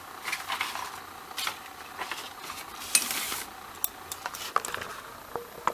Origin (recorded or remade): recorded